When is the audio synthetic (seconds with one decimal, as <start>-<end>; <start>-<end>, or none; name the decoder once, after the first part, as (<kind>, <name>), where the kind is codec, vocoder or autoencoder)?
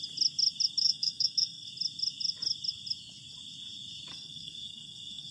0.8-1.7 (codec, SNAC); 4.1-5.3